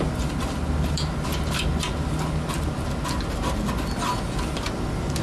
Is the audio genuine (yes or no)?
yes